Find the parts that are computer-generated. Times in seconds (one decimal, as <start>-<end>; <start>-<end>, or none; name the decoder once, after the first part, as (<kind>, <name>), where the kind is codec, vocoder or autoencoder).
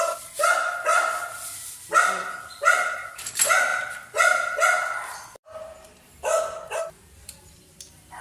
0.0-8.2 (vocoder, BigVGAN v2)